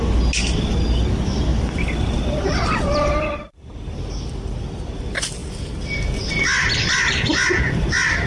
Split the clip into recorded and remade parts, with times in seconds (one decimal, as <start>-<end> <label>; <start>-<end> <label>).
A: 0.0-1.5 recorded; 1.5-5.0 remade; 5.0-5.4 recorded; 5.4-6.3 remade; 6.3-8.3 recorded